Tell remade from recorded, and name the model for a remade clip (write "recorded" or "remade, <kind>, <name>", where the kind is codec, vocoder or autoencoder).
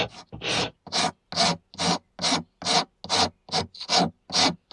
recorded